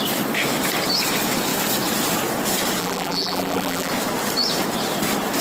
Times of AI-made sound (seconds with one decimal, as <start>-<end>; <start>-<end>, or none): 2.8-3.9